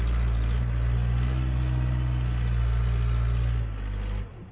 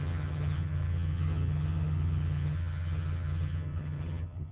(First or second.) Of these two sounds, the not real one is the second